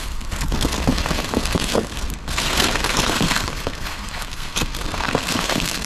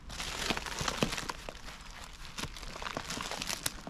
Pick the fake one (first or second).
first